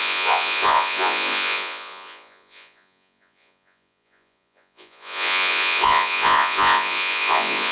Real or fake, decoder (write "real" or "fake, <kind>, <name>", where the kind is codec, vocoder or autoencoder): fake, vocoder, Vocos